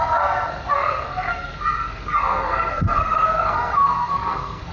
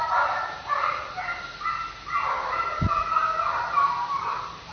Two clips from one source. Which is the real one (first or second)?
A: second